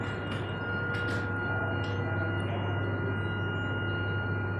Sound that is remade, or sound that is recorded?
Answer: recorded